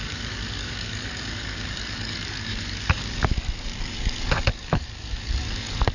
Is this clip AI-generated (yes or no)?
yes